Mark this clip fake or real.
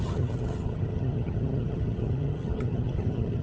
fake